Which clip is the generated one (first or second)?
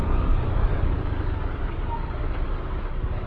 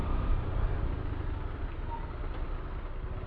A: first